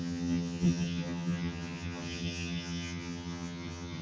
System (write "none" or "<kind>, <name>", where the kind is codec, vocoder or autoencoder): vocoder, HiFi-GAN